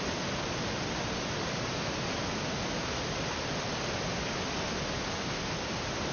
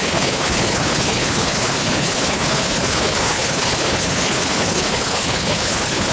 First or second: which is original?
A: first